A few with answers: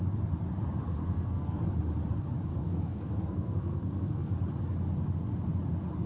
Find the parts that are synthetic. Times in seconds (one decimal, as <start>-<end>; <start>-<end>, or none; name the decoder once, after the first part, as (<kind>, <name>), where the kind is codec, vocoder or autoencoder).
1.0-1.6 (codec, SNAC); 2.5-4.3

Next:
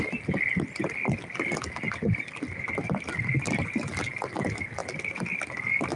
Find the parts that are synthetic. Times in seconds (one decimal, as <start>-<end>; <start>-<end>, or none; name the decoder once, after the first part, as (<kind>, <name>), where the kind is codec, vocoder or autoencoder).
none

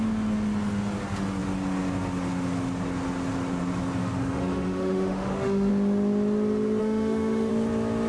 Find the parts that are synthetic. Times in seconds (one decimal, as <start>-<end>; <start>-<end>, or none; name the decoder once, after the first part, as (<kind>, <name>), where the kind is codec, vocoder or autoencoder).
4.0-5.7 (autoencoder, DAC-VAE); 6.8-7.5

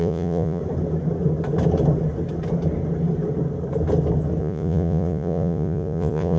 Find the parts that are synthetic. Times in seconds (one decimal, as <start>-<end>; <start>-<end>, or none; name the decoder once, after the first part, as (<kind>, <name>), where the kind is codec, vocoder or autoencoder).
0.0-0.6 (vocoder, Vocos); 4.4-6.4

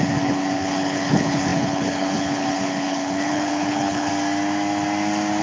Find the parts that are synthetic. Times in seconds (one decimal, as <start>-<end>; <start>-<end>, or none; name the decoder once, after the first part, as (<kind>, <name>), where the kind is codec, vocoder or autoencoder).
0.0-4.1 (codec, HILCodec)